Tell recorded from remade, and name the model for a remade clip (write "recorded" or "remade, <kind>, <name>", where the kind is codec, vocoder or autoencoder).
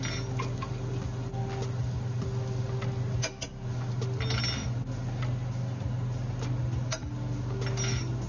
recorded